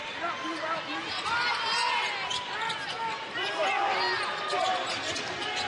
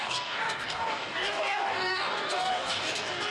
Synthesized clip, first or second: second